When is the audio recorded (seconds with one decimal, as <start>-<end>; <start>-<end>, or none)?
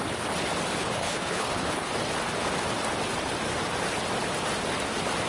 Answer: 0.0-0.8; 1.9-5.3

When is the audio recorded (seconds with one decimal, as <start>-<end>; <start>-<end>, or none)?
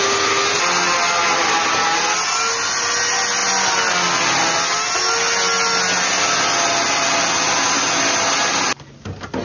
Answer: 0.0-9.4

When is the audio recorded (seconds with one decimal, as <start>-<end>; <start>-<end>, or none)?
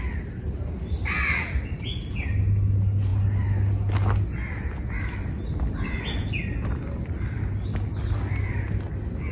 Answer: 0.0-9.3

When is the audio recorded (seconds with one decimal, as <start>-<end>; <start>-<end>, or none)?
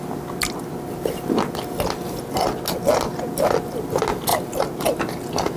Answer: 0.0-5.6